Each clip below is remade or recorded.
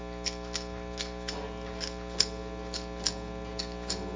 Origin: recorded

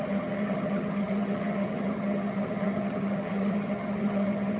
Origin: remade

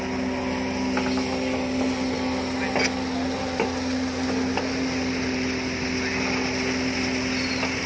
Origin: recorded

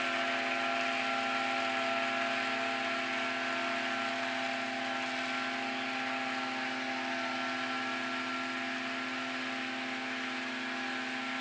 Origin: recorded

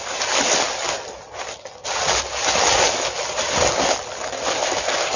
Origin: recorded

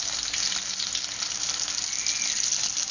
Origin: recorded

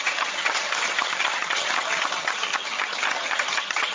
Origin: remade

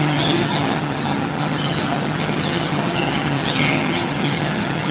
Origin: remade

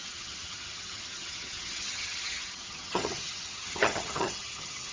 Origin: remade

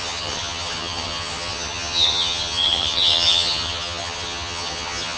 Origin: remade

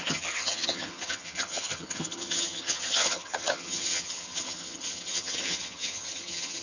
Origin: remade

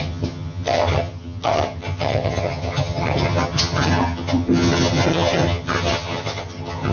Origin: remade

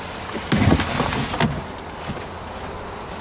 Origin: recorded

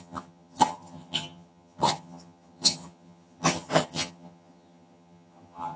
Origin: remade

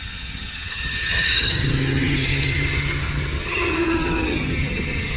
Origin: remade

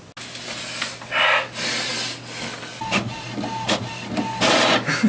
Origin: recorded